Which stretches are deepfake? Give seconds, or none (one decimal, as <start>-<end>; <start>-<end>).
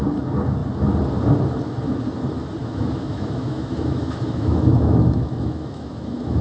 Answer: 2.6-6.4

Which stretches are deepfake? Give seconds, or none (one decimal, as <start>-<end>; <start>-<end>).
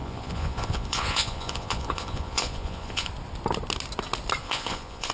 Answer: 0.0-3.1; 4.4-5.1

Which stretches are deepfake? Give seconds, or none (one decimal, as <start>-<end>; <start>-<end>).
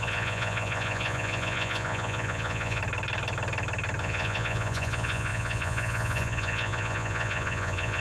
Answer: 0.0-2.8; 4.0-8.0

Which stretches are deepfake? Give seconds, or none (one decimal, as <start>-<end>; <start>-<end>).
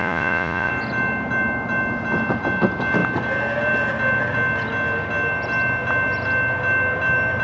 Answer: 0.0-0.7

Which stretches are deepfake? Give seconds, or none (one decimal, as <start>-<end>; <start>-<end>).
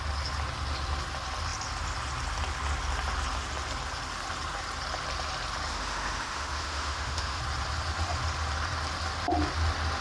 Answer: 5.7-7.4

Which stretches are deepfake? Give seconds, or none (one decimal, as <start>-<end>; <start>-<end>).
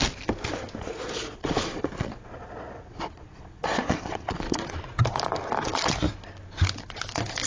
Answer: 0.9-5.0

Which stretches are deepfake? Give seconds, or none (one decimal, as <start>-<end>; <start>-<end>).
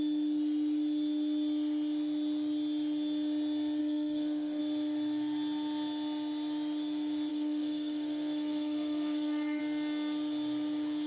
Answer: 3.8-4.6; 7.3-9.6